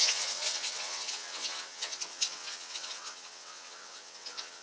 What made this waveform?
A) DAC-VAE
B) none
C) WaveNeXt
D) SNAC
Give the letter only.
C